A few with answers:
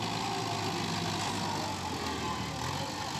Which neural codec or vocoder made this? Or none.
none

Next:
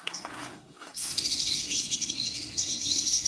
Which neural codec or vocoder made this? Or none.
codec, SNAC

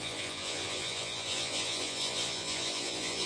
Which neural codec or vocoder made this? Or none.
vocoder, Vocos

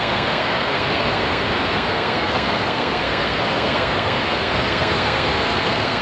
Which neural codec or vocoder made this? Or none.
codec, SNAC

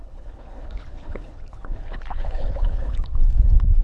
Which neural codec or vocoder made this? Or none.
codec, HILCodec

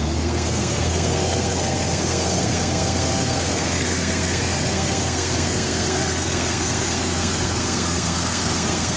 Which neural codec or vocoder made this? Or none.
codec, SNAC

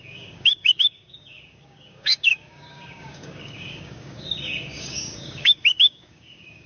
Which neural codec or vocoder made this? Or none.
codec, DAC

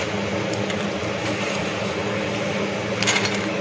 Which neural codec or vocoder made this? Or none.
none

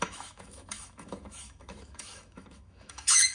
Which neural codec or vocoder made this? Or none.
autoencoder, DAC-VAE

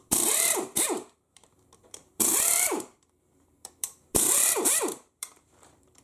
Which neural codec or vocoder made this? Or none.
vocoder, BigVGAN v2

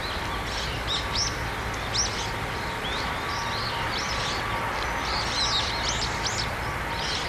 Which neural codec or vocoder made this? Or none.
none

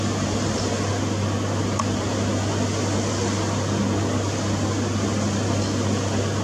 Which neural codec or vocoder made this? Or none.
none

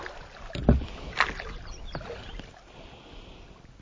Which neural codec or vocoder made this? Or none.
none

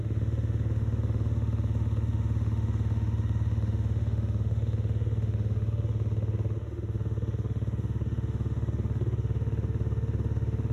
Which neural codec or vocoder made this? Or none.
autoencoder, DAC-VAE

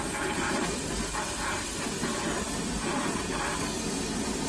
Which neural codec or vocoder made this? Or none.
none